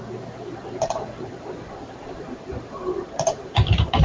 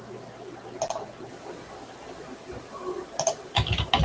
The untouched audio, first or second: second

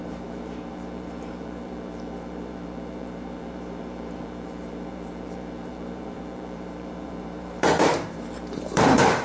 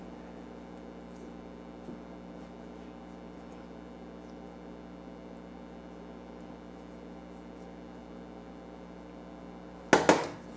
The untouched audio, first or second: second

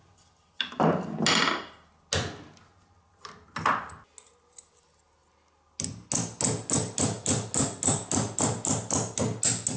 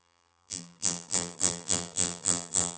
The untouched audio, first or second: first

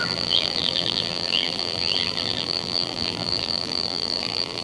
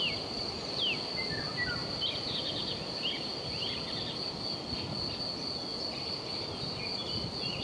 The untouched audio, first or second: second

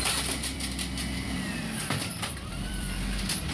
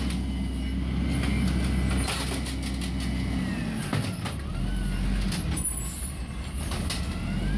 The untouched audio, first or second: second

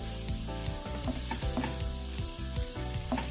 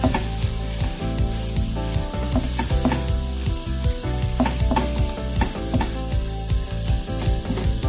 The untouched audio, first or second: second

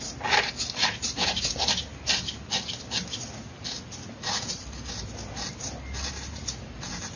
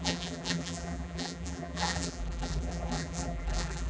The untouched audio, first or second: first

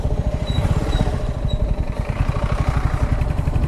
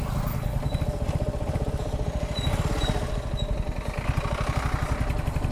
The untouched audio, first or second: second